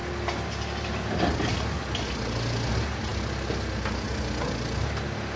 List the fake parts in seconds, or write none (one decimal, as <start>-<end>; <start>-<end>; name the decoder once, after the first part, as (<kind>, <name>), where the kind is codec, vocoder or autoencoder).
none